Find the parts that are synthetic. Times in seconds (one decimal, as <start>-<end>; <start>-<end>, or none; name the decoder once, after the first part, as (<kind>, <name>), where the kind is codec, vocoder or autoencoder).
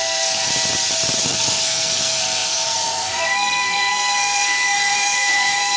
0.0-0.5 (codec, SNAC); 1.2-5.8